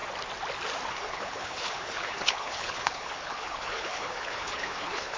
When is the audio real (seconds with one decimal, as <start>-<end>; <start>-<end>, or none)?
0.0-0.9